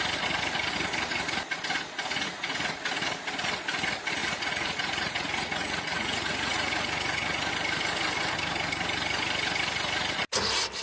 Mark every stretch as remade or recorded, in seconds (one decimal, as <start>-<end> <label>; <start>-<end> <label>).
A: 0.0-2.1 recorded; 2.1-2.7 remade; 2.7-4.2 recorded; 4.2-7.5 remade; 7.5-10.8 recorded